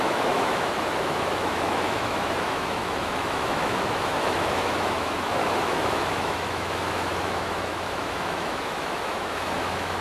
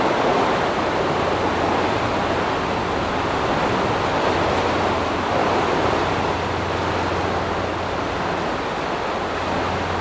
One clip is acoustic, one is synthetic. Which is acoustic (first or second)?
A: second